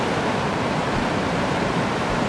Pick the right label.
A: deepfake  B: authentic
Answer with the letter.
A